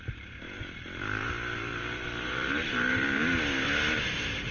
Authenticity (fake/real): fake